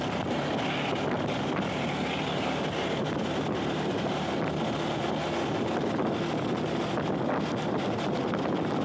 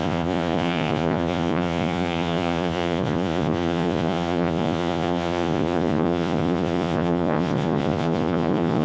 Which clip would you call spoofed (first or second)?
second